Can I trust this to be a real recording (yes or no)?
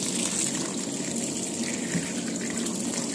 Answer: yes